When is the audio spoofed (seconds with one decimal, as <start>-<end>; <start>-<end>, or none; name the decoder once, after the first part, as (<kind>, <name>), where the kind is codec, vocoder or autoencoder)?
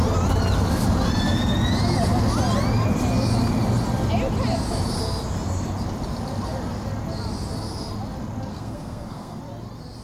8.5-9.4 (codec, SNAC)